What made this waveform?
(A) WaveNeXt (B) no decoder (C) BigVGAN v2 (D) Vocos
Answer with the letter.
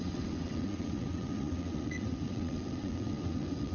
A